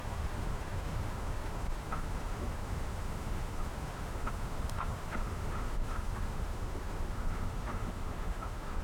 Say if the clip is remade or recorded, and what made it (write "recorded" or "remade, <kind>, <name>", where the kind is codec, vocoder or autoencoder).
remade, autoencoder, DAC-VAE